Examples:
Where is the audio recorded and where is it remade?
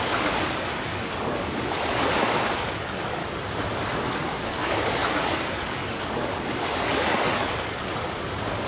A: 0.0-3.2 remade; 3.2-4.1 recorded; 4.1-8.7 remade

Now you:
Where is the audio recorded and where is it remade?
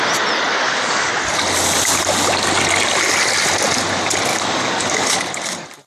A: 0.0-0.5 recorded; 0.5-1.1 remade; 1.1-4.3 recorded; 4.3-5.3 remade; 5.3-5.9 recorded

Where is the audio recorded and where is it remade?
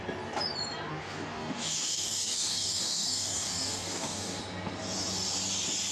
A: 0.0-0.9 recorded; 0.9-4.4 remade; 4.4-5.9 recorded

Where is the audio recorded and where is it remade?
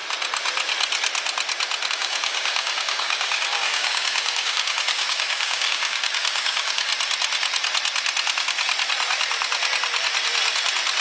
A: 0.0-1.9 recorded; 1.9-6.9 remade; 6.9-11.0 recorded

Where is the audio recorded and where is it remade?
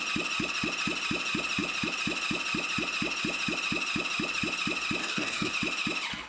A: 0.0-5.0 recorded; 5.0-5.5 remade; 5.5-6.3 recorded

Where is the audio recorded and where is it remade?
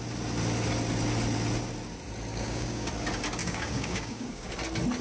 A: 0.0-2.3 recorded; 2.3-2.9 remade; 2.9-3.4 recorded; 3.4-4.5 remade; 4.5-5.0 recorded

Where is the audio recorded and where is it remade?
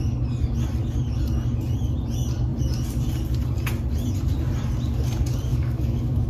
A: 0.0-5.5 recorded; 5.5-6.3 remade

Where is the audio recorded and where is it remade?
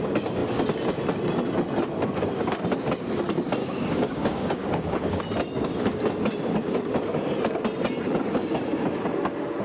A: 0.0-3.6 recorded; 3.6-5.2 remade; 5.2-9.6 recorded